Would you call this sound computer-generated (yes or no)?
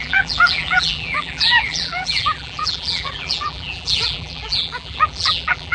yes